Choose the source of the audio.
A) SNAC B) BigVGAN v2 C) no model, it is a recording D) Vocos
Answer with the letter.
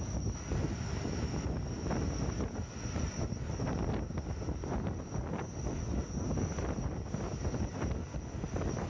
C